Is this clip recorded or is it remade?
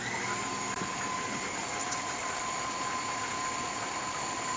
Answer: remade